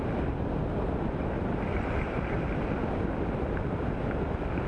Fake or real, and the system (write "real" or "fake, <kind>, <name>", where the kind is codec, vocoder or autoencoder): real